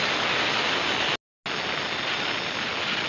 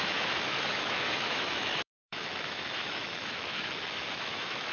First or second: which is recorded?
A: first